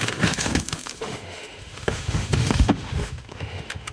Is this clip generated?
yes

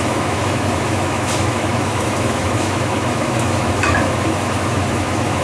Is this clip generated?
yes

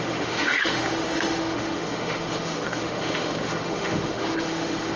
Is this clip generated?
yes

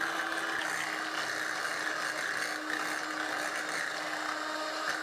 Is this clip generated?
no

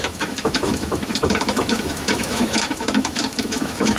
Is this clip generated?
yes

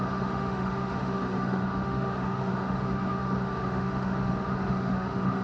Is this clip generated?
yes